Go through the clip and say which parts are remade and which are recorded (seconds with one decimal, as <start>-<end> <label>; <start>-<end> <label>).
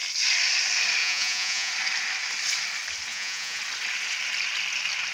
0.0-1.0 recorded; 1.0-1.7 remade; 1.7-3.1 recorded; 3.1-3.6 remade; 3.6-5.1 recorded